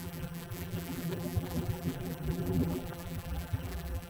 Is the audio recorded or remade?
remade